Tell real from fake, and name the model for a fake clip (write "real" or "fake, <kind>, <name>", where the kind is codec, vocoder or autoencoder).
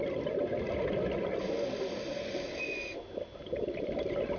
real